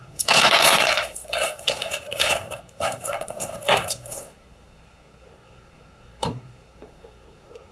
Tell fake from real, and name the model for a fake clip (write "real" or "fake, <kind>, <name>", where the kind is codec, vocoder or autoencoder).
fake, codec, SNAC